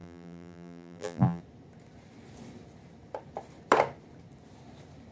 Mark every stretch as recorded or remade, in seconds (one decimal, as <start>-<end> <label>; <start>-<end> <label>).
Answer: 0.0-1.4 remade; 1.4-5.1 recorded